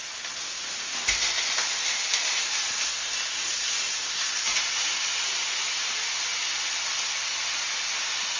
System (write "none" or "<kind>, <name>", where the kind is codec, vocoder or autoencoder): none